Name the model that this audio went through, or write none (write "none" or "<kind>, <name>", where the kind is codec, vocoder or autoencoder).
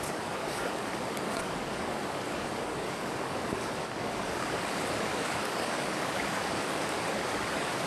codec, DAC